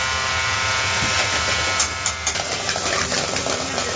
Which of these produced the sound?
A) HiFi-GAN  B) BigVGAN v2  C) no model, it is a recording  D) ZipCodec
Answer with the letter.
C